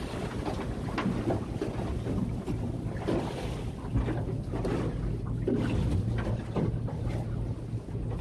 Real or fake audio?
real